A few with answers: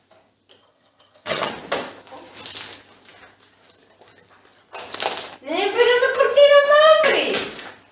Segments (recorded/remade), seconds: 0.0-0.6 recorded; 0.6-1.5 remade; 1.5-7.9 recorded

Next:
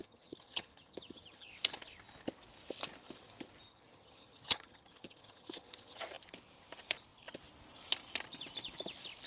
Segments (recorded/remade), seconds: 0.0-1.5 remade; 1.5-3.7 recorded; 3.7-6.0 remade; 6.0-9.3 recorded

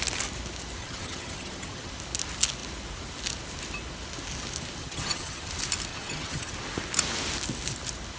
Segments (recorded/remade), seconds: 0.0-0.8 recorded; 0.8-1.9 remade; 1.9-4.8 recorded; 4.8-5.5 remade; 5.5-5.9 recorded; 5.9-6.5 remade; 6.5-8.2 recorded

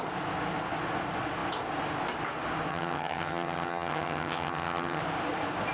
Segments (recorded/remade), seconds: 0.0-2.7 recorded; 2.7-5.0 remade; 5.0-5.7 recorded

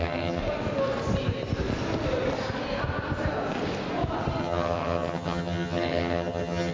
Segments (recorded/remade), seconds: 0.0-0.4 remade; 0.4-4.4 recorded; 4.4-6.7 remade

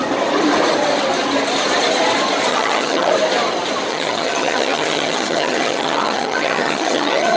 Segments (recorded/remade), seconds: 0.0-2.5 recorded; 2.5-3.1 remade; 3.1-3.9 recorded; 3.9-7.4 remade